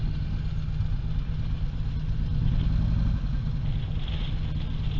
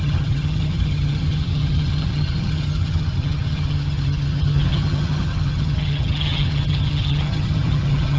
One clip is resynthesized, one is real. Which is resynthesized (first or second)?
second